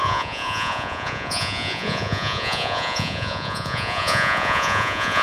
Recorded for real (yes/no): no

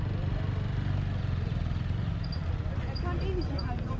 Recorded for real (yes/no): yes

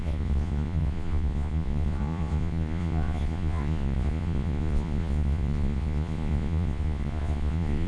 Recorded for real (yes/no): no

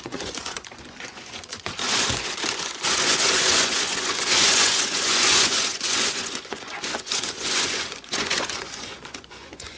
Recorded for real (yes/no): no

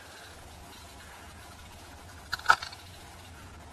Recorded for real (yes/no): no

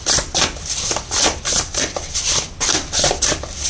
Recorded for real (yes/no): yes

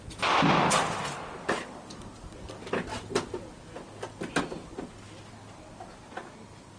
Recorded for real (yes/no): yes